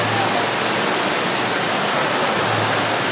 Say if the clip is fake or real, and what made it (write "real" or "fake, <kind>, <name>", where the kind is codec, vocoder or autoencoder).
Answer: real